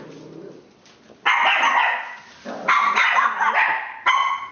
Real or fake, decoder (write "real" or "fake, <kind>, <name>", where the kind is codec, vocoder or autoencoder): real